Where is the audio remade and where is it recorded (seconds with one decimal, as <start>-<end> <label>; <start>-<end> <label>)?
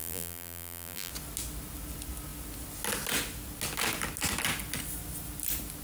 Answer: 0.0-1.1 remade; 1.1-5.8 recorded